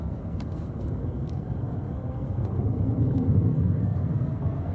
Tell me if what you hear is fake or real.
fake